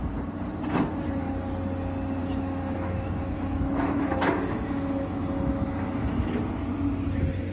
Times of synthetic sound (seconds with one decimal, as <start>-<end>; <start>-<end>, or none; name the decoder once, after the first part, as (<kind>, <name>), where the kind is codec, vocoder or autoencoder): 2.2-6.3 (autoencoder, DAC-VAE)

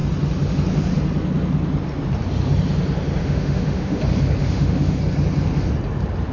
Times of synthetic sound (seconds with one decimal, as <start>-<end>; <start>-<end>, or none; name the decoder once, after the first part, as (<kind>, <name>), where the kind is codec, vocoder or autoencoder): 3.2-4.0 (autoencoder, DAC-VAE); 4.4-5.0

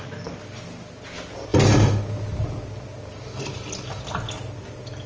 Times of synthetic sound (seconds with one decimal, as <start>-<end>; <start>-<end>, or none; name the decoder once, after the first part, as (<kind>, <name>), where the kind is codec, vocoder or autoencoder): none